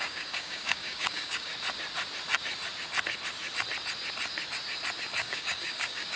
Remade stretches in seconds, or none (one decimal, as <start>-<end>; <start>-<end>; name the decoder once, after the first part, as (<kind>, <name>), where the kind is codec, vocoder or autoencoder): 0.0-1.5 (codec, DAC); 5.2-6.2